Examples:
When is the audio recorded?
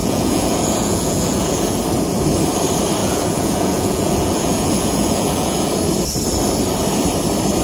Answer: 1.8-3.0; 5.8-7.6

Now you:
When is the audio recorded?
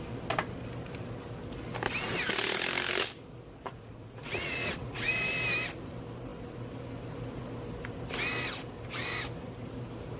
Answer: 0.0-3.7; 5.1-10.2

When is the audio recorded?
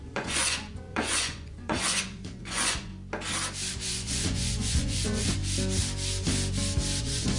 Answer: 2.9-3.7; 5.4-7.0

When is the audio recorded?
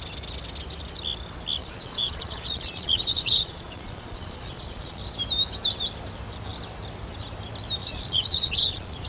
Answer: 0.0-1.6; 5.0-7.8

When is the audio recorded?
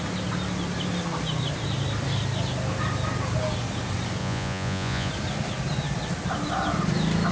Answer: 0.0-4.2; 5.1-7.3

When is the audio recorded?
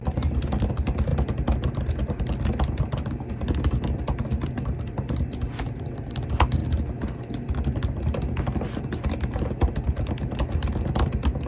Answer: 0.0-11.5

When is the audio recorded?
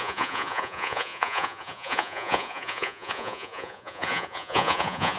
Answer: none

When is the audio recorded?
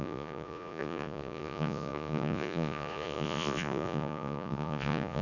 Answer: none